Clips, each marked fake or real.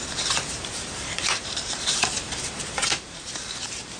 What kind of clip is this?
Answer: fake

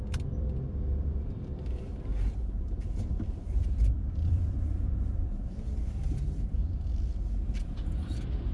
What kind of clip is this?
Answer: fake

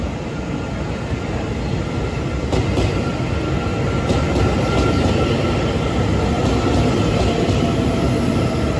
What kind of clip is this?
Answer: real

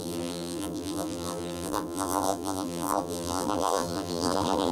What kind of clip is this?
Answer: fake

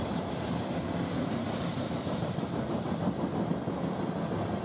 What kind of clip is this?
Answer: real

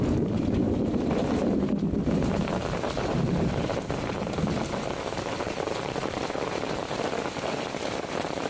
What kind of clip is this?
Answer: fake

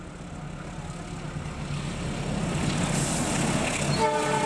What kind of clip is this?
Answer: real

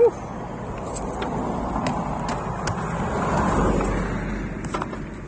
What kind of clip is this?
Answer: real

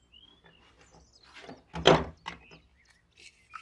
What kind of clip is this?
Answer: real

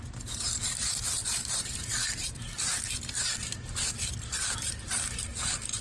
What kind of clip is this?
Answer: fake